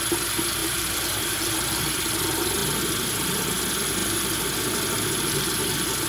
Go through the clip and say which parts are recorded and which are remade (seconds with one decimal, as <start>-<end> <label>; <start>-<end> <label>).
0.0-0.6 recorded; 0.6-1.9 remade; 1.9-6.1 recorded